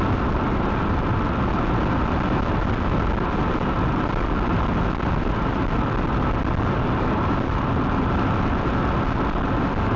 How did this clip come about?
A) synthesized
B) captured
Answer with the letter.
B